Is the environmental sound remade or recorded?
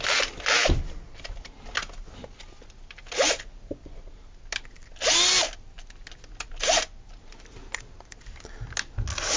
recorded